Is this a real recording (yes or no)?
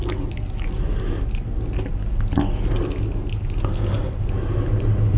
yes